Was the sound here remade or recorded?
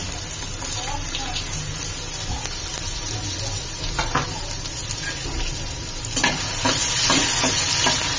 recorded